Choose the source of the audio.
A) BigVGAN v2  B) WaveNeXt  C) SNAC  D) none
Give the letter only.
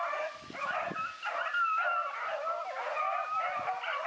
D